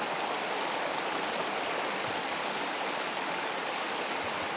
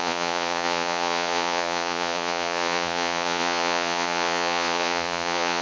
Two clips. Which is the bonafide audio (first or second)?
first